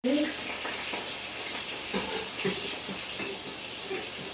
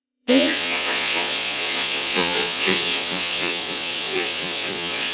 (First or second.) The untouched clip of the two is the first